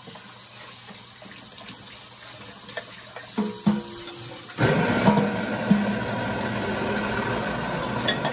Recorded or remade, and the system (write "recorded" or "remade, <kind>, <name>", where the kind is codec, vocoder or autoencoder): recorded